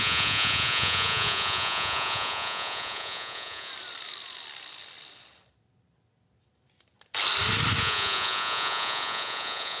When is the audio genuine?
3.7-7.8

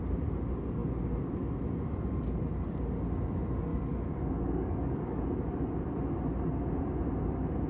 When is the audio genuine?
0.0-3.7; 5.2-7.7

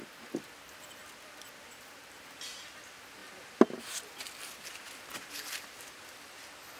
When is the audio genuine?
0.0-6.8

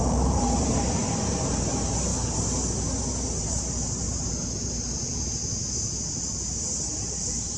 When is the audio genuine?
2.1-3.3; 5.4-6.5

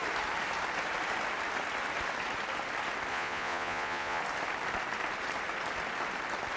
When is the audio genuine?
0.0-3.1; 4.2-6.6